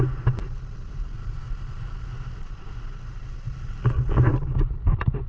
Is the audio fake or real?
real